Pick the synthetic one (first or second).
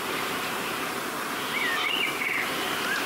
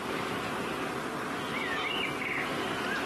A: first